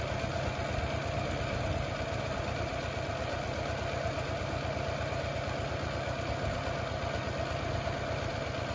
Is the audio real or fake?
real